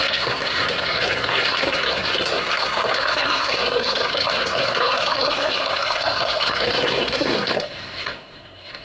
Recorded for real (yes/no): no